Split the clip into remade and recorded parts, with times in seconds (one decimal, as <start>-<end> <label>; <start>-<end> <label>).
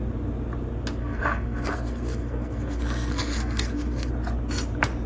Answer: 0.0-1.0 recorded; 1.0-4.1 remade; 4.1-5.1 recorded